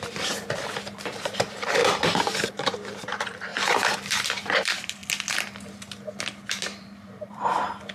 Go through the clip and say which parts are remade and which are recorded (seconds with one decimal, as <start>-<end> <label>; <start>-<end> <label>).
0.0-1.8 remade; 1.8-2.5 recorded; 2.5-5.0 remade; 5.0-6.5 recorded; 6.5-7.9 remade